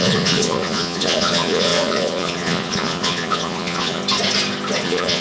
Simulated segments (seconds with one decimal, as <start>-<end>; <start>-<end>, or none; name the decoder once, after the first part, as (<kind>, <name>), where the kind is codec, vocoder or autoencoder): 0.0-4.0 (vocoder, Vocos); 4.8-5.2